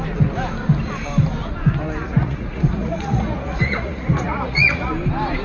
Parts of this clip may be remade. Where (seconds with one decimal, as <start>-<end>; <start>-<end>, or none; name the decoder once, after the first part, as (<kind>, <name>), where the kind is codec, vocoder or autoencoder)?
2.0-4.9 (vocoder, Vocos)